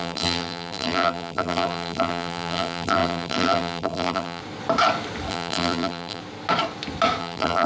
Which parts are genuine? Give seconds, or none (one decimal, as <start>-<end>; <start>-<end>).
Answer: 4.4-5.3; 6.2-7.2